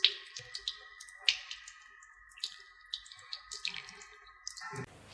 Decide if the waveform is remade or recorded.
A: recorded